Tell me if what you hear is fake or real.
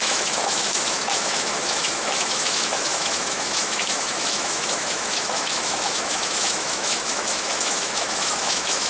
fake